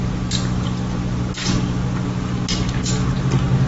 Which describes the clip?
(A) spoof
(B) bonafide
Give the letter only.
B